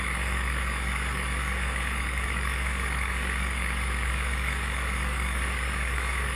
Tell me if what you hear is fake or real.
fake